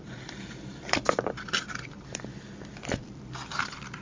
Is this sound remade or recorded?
remade